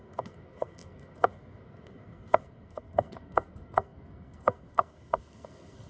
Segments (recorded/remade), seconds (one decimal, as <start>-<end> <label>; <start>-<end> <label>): 0.0-5.9 remade